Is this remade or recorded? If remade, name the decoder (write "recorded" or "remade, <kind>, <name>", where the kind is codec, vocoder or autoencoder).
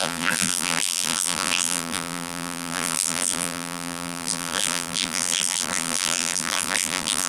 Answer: remade, vocoder, BigVGAN v2